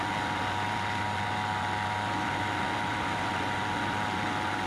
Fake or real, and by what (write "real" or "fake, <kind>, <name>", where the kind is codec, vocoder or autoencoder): real